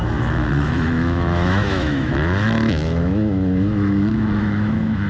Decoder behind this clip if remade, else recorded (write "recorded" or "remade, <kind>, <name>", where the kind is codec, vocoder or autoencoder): remade, autoencoder, DAC-VAE